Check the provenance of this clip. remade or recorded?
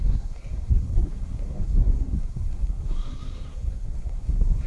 remade